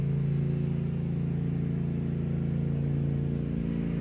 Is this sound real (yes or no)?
yes